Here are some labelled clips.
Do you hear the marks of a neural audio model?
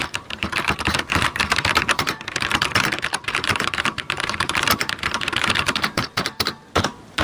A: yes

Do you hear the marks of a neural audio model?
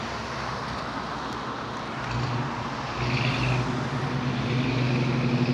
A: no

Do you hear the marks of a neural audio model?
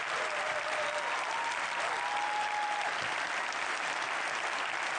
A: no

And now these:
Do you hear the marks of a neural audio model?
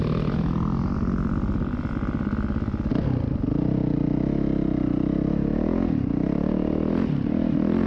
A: no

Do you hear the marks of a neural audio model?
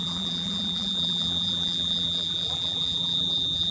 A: yes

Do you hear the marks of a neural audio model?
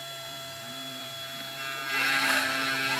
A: yes